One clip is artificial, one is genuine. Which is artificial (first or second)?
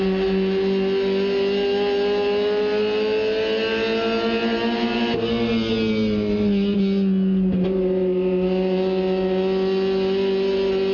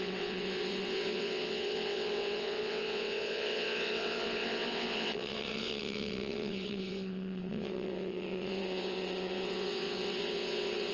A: second